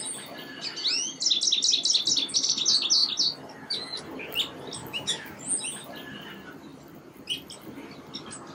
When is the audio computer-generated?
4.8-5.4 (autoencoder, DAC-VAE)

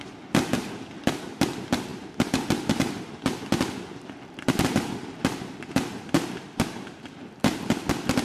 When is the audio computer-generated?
none

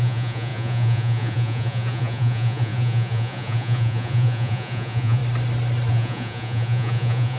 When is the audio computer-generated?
0.0-5.2 (vocoder, Vocos); 5.9-7.4

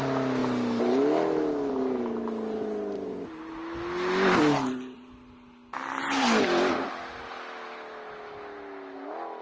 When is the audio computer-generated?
none

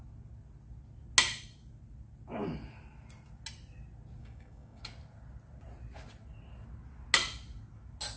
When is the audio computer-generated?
4.2-4.8 (codec, DAC)

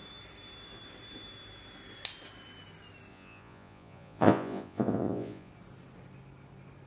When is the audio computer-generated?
3.1-5.5 (vocoder, Vocos)